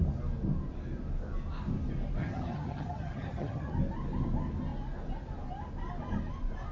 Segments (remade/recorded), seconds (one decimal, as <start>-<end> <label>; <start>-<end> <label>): 0.0-2.2 recorded; 2.2-3.7 remade; 3.7-6.7 recorded